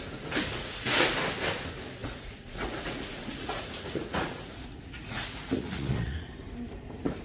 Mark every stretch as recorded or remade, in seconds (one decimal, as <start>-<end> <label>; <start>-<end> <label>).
0.0-0.5 recorded; 0.5-1.1 remade; 1.1-2.0 recorded; 2.0-6.3 remade; 6.3-7.2 recorded